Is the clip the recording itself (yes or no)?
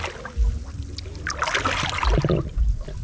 yes